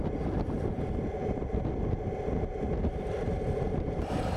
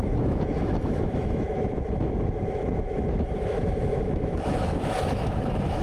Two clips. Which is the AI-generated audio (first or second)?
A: second